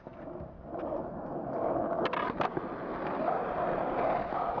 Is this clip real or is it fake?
real